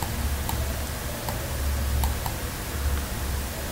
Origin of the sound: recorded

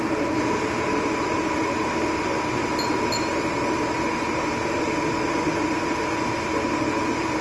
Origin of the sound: recorded